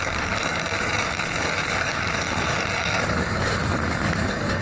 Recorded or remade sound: remade